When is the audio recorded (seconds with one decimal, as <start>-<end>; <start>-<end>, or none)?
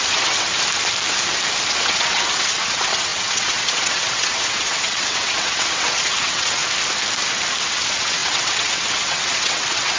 0.5-1.7; 6.6-7.6